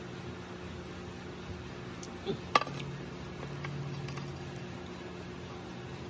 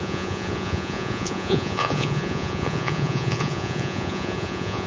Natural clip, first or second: first